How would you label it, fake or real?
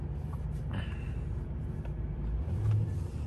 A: fake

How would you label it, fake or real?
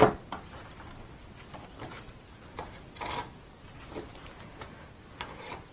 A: real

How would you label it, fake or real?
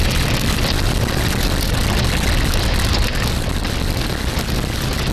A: real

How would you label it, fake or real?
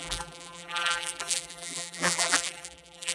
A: fake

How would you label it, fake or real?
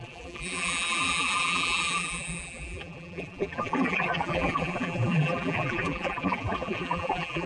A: fake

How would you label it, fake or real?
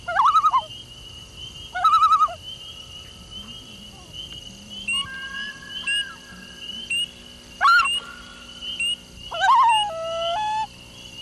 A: real